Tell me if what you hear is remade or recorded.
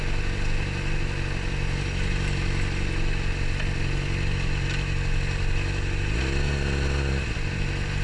recorded